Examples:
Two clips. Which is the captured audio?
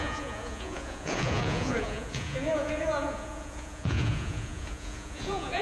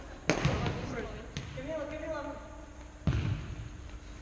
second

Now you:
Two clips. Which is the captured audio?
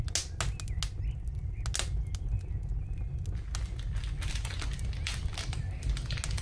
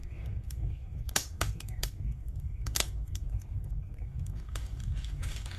first